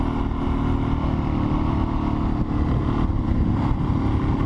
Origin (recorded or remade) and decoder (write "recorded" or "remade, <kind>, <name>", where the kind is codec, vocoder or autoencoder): recorded